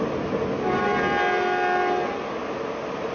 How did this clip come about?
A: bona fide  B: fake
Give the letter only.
A